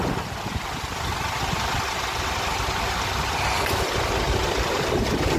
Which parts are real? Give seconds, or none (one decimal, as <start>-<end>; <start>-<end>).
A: 0.0-2.8